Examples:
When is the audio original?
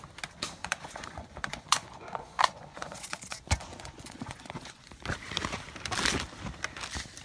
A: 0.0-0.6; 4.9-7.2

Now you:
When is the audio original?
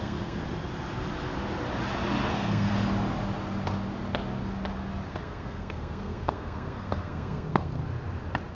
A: 0.4-2.3; 2.7-5.1; 7.8-8.5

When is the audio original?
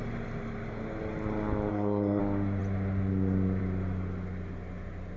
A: 0.0-1.7; 2.2-5.2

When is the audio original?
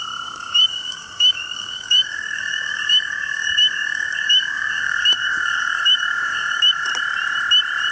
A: 6.9-7.9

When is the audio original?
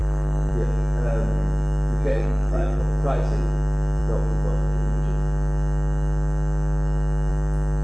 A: 0.5-2.1; 2.8-7.8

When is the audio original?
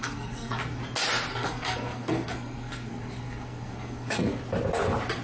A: 0.8-1.3; 4.4-5.2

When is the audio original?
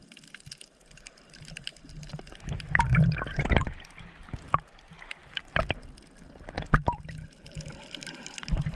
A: 5.2-7.9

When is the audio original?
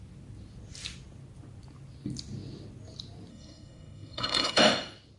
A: 0.0-3.3; 4.6-5.2